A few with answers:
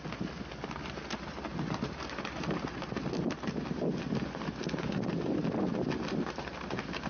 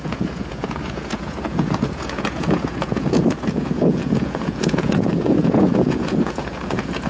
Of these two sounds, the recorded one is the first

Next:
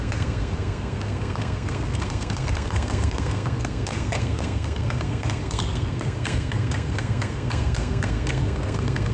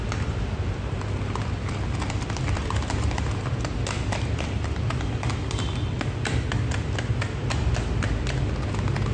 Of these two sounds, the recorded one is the second